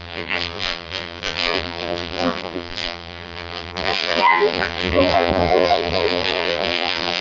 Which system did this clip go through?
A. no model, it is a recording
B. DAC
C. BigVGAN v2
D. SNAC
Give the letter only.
C